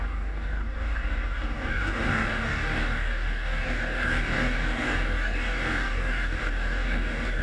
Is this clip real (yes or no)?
no